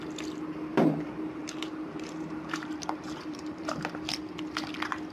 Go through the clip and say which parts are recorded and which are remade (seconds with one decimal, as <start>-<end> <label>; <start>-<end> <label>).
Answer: 0.0-0.7 recorded; 0.7-3.8 remade; 3.8-5.1 recorded